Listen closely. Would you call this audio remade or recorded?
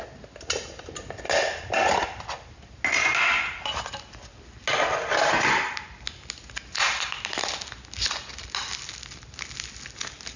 recorded